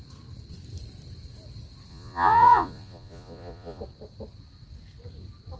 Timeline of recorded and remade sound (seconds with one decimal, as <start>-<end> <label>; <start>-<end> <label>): 0.0-1.9 recorded; 1.9-3.8 remade; 3.8-5.6 recorded